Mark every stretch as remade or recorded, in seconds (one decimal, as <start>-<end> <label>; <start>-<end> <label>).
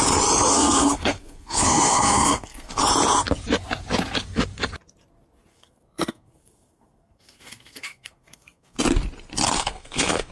0.0-0.5 recorded; 0.5-2.8 remade; 2.8-5.5 recorded; 5.5-8.8 remade; 8.8-9.6 recorded; 9.6-10.3 remade